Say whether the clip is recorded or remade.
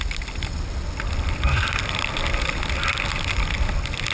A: recorded